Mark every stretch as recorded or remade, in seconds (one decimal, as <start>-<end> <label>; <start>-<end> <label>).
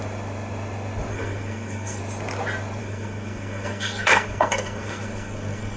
0.0-1.1 recorded; 1.1-2.0 remade; 2.0-2.8 recorded; 2.8-5.8 remade